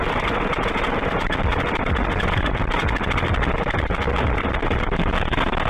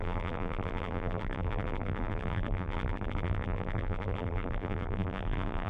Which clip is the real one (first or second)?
first